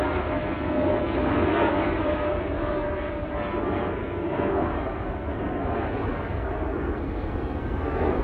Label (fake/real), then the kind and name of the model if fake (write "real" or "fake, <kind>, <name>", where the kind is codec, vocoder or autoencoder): fake, codec, SNAC